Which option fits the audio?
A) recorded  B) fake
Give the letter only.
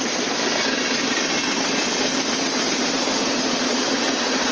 A